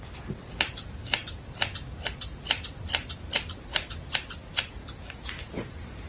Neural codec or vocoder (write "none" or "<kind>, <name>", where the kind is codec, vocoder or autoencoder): none